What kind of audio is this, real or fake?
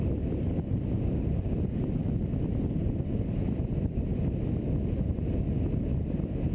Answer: real